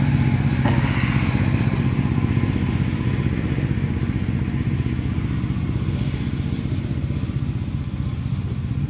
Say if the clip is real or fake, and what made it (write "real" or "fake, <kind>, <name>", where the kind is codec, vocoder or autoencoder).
real